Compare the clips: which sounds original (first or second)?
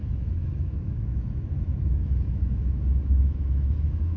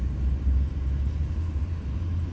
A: second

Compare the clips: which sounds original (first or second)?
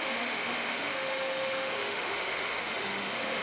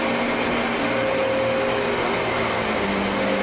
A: second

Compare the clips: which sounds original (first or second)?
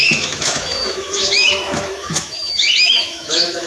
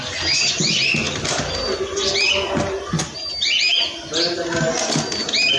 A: second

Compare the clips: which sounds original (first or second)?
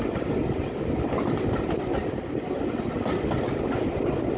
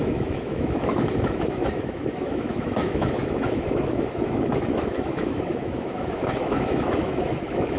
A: first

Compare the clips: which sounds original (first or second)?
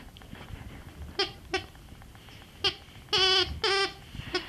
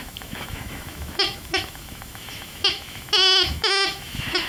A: first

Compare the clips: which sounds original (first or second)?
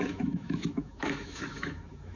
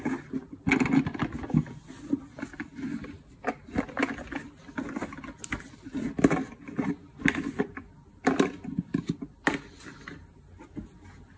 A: second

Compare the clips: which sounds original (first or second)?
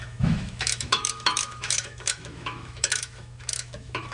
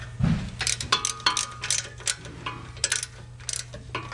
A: second